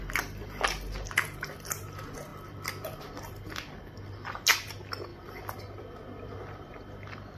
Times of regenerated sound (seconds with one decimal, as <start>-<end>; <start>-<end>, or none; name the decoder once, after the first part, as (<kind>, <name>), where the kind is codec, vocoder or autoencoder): none